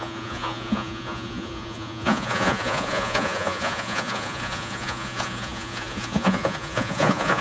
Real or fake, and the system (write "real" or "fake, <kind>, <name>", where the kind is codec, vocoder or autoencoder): fake, vocoder, Vocos